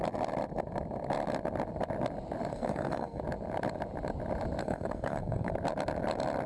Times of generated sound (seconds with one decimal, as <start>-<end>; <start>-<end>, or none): 2.5-3.2; 4.6-5.5